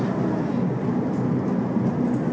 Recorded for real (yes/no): yes